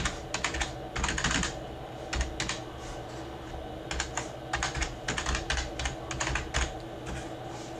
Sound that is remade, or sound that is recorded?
recorded